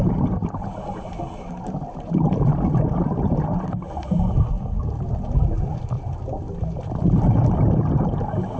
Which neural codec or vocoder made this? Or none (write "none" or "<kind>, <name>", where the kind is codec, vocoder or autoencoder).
none